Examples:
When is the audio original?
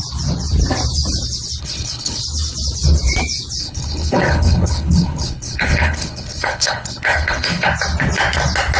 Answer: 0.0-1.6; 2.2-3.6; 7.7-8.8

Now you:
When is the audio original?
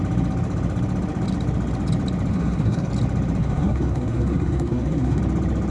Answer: 0.0-2.3; 2.9-3.4; 5.2-5.7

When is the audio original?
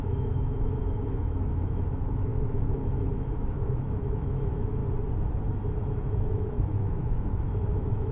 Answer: 4.8-6.1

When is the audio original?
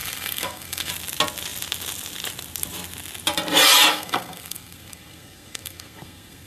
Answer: 0.9-3.9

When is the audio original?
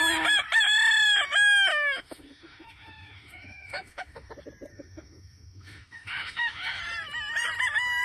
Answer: 0.0-1.7; 4.3-4.7; 6.8-8.0